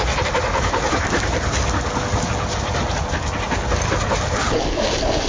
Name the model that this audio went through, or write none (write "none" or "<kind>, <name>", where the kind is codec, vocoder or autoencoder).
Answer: none